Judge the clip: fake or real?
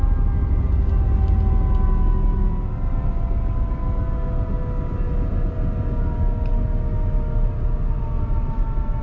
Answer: real